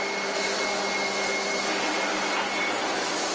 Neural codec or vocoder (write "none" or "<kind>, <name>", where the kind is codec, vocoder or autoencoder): none